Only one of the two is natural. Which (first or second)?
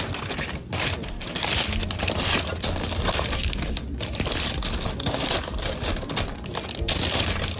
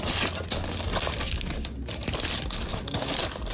second